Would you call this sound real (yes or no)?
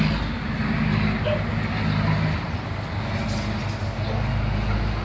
yes